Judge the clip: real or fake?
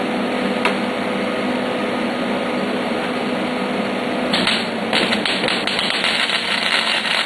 real